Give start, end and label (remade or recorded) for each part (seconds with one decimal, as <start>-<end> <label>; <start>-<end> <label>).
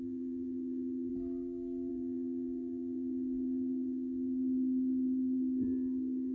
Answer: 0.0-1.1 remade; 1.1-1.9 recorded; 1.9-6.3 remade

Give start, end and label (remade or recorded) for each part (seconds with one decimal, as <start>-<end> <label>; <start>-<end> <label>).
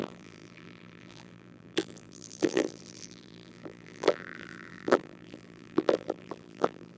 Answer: 0.0-7.0 remade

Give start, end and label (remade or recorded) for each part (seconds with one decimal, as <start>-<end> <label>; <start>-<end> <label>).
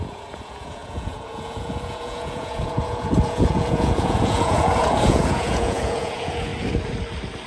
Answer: 0.0-6.5 remade; 6.5-7.5 recorded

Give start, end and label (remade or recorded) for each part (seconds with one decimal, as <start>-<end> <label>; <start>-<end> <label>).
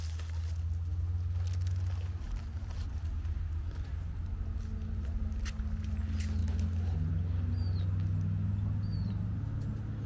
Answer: 0.0-10.1 recorded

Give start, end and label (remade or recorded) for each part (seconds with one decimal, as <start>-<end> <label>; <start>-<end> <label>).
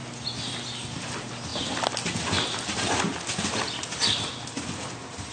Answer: 0.0-5.3 recorded